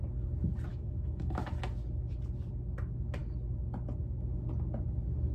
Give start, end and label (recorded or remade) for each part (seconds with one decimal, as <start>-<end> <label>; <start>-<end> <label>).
0.0-0.7 recorded; 0.7-1.4 remade; 1.4-5.3 recorded